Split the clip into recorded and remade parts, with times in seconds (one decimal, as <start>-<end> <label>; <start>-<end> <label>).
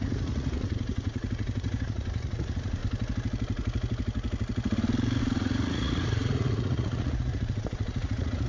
0.0-2.8 remade; 2.8-5.2 recorded; 5.2-8.5 remade